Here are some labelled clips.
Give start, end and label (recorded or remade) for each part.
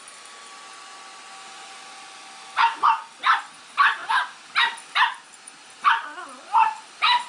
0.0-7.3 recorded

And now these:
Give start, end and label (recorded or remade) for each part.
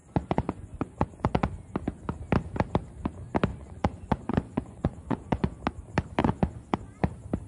0.0-1.5 remade; 1.5-3.5 recorded; 3.5-5.6 remade; 5.6-6.2 recorded; 6.2-7.1 remade; 7.1-7.5 recorded